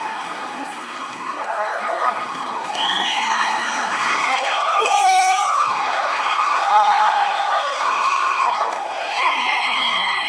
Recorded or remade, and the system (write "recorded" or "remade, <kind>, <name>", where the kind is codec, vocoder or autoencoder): remade, codec, SNAC